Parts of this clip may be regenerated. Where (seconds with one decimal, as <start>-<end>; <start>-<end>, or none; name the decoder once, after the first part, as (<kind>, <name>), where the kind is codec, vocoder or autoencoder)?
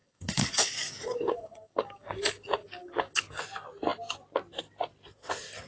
0.0-3.4 (codec, DAC)